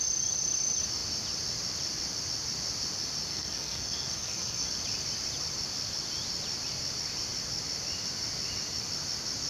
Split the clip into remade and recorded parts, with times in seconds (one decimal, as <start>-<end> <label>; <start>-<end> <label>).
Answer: 0.0-3.3 recorded; 3.3-4.7 remade; 4.7-9.5 recorded